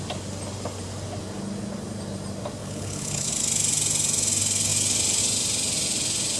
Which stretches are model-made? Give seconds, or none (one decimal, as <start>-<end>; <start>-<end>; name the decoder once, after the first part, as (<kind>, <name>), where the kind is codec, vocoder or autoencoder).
2.6-3.3 (codec, HILCodec)